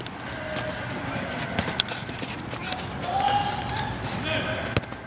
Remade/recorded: recorded